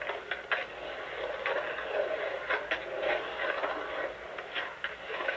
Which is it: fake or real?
real